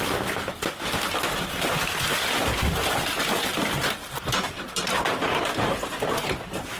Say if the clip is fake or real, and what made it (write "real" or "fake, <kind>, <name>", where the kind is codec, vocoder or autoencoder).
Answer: real